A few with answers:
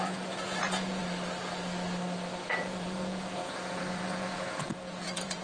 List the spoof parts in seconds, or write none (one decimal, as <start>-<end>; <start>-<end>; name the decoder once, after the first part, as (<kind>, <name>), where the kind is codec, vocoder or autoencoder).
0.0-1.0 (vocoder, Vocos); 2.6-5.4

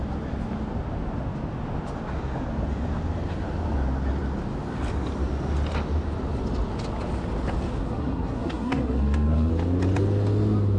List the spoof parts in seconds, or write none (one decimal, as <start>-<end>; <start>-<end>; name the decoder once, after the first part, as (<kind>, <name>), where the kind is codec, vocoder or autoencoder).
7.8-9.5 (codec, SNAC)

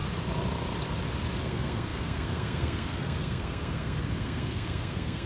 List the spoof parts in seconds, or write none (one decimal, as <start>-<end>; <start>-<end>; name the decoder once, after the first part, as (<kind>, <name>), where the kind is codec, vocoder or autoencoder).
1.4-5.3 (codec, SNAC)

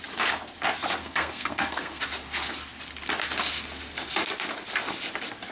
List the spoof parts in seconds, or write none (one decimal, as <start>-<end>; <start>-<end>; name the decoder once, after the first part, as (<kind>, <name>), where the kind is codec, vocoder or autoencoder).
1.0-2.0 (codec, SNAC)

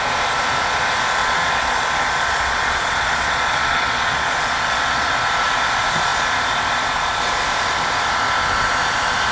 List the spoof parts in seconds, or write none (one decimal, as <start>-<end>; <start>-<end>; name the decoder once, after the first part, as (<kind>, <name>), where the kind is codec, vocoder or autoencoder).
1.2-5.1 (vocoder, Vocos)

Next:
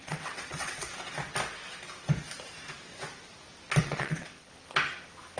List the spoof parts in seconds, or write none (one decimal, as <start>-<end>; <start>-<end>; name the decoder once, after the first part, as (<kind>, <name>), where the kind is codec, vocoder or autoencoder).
0.0-0.9 (vocoder, WaveNeXt); 3.8-4.5

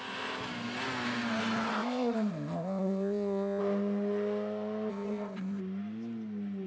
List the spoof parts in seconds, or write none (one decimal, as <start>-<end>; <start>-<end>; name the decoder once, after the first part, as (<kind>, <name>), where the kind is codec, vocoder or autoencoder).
1.7-3.6 (codec, ZipCodec); 4.9-5.6